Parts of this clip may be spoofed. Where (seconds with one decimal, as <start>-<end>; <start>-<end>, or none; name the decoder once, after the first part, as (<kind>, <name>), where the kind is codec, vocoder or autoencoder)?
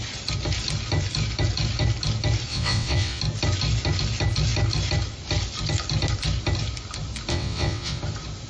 2.5-3.2 (vocoder, WaveNeXt); 7.3-8.0